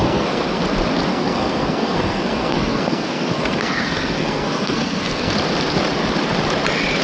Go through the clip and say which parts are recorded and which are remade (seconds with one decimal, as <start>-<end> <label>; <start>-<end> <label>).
0.0-0.6 remade; 0.6-1.1 recorded; 1.1-5.3 remade; 5.3-7.0 recorded